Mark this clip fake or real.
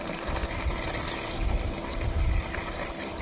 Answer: fake